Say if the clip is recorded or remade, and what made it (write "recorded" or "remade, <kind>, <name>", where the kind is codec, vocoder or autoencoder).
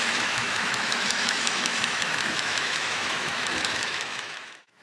remade, autoencoder, DAC-VAE